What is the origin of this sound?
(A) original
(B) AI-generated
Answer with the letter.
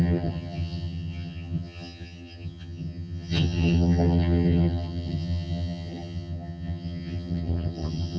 B